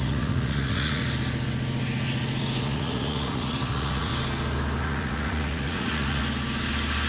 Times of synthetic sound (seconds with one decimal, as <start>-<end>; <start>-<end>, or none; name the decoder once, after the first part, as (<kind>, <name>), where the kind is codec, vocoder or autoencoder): 0.0-1.0 (vocoder, Vocos); 2.6-4.1; 4.8-6.2